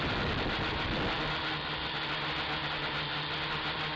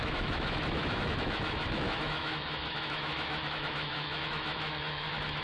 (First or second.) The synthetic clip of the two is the second